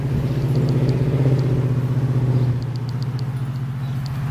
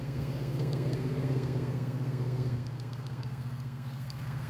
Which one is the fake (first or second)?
second